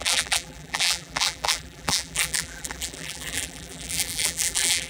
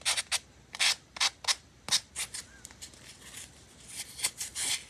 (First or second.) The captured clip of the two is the second